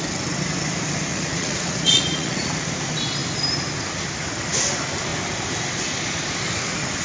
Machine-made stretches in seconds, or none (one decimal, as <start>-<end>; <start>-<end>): 1.1-2.5